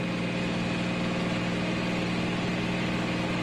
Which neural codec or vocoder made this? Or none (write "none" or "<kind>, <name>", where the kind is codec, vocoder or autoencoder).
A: none